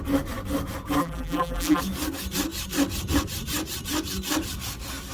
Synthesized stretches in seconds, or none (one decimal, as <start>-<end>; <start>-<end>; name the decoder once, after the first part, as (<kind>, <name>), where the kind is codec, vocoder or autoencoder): 1.0-1.8 (vocoder, BigVGAN v2)